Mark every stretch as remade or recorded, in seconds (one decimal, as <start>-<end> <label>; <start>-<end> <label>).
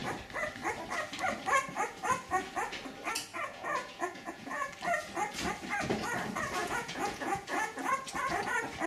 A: 0.0-3.3 recorded; 3.3-4.7 remade; 4.7-6.6 recorded; 6.6-7.9 remade; 7.9-8.9 recorded